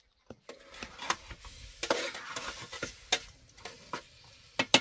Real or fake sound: real